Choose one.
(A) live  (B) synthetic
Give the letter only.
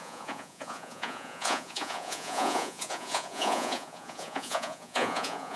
B